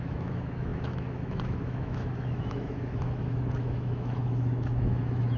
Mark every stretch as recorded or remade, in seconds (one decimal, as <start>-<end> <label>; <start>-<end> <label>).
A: 0.0-5.4 remade